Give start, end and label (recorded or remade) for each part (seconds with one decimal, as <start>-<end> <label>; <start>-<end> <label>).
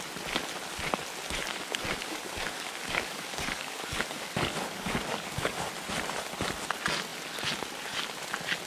0.0-1.5 recorded; 1.5-5.7 remade; 5.7-8.7 recorded